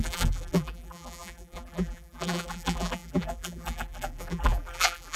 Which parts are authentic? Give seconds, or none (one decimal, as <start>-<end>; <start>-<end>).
none

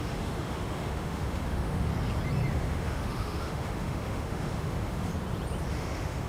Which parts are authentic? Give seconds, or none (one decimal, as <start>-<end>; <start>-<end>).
1.9-2.5; 5.1-5.7

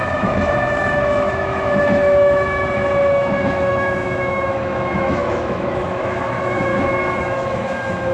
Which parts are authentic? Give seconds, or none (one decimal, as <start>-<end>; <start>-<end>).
6.7-7.2

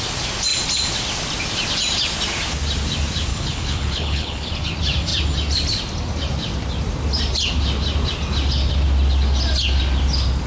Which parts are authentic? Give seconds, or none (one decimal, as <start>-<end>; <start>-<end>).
0.0-3.3; 4.5-10.5

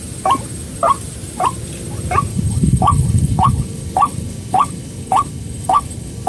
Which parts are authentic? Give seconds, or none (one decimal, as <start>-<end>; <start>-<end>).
0.0-2.3

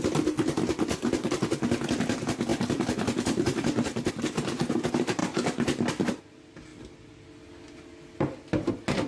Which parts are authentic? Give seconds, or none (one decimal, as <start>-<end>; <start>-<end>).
0.0-2.5; 4.1-9.1

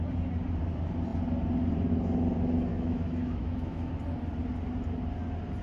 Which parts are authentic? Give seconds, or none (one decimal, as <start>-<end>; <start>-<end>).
0.0-2.7; 3.9-5.6

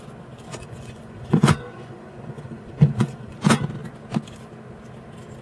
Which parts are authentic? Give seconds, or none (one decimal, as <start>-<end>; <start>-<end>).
0.0-0.5; 3.4-5.4